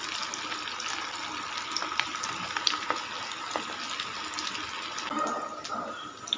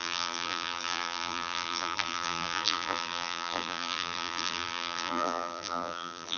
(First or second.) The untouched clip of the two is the first